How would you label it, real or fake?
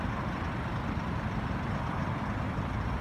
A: fake